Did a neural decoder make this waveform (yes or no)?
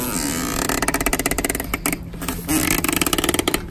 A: no